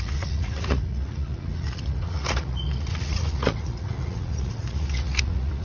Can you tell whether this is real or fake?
fake